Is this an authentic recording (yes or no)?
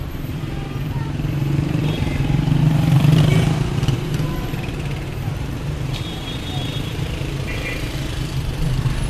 no